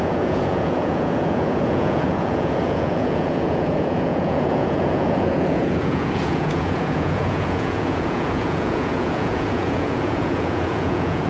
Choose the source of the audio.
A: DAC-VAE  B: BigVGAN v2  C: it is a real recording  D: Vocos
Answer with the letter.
D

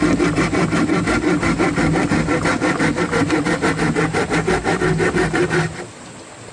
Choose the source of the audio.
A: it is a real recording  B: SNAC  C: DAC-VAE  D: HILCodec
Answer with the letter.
A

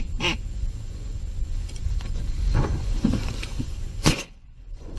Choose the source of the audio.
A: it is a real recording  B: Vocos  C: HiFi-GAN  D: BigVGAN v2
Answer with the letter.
B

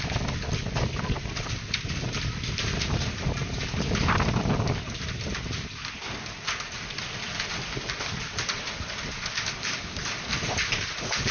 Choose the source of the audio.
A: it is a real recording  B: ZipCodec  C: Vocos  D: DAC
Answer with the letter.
A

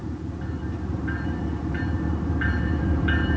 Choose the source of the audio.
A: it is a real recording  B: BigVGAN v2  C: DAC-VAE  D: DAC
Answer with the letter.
B